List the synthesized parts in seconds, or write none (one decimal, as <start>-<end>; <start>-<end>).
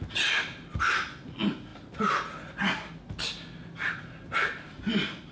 none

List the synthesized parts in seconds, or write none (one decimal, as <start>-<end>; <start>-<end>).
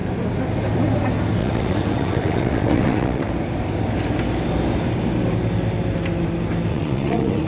1.4-3.3; 6.7-7.5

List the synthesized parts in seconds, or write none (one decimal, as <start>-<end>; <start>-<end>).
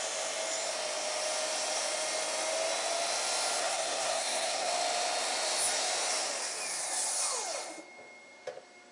3.6-4.7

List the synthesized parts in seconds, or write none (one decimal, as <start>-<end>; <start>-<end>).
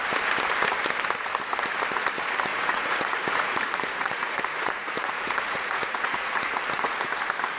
2.5-7.1